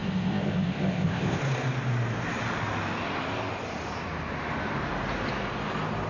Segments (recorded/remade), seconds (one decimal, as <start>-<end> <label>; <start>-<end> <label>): 0.0-1.4 remade; 1.4-6.1 recorded